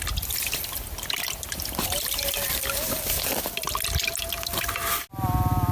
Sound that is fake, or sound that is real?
real